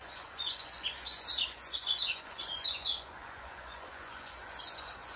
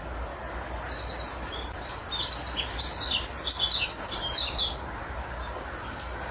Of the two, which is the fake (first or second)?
first